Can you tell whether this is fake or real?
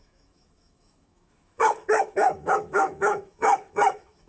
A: fake